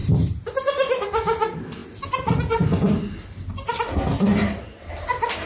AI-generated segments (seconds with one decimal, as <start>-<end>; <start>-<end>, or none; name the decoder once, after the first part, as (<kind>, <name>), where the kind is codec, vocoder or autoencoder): none